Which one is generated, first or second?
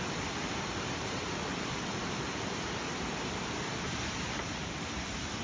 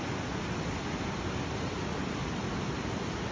first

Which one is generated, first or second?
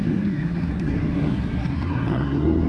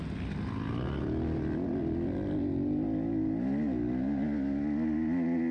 first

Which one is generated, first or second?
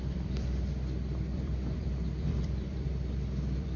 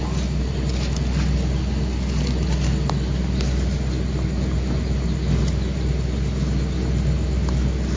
first